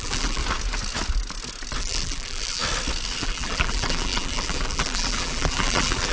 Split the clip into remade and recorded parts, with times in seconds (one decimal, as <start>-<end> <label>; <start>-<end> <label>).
0.0-0.4 remade; 0.4-1.8 recorded; 1.8-2.6 remade; 2.6-3.2 recorded; 3.2-6.1 remade